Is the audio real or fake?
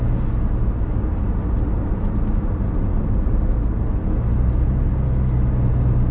real